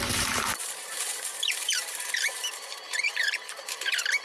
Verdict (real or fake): fake